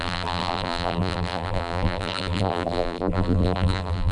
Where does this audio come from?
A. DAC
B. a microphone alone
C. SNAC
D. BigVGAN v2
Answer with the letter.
D